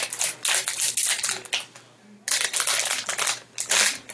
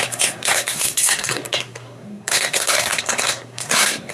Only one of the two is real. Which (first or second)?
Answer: first